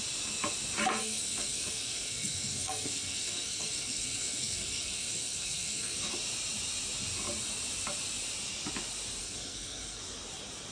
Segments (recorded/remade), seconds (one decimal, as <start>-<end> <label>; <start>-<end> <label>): 0.0-1.0 recorded; 1.0-6.1 remade; 6.1-9.2 recorded; 9.2-10.0 remade; 10.0-10.7 recorded